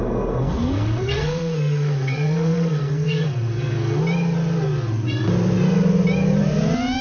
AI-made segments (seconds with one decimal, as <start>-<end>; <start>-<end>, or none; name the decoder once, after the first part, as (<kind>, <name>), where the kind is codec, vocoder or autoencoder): 0.0-4.0 (codec, SNAC)